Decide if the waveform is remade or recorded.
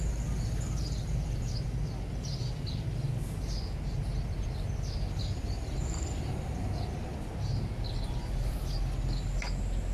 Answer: recorded